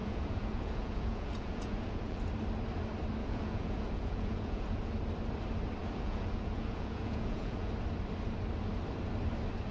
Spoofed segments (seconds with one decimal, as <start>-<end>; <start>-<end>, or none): 0.0-2.3; 3.2-5.0; 5.8-7.7